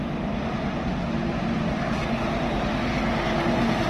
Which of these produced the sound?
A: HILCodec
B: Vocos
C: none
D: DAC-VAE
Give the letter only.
C